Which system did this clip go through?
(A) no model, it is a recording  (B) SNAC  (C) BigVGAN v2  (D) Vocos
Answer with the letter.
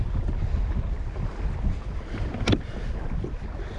A